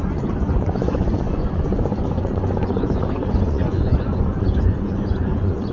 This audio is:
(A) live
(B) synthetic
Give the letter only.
B